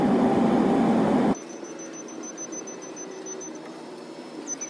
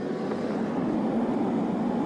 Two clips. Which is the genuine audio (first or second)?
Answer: first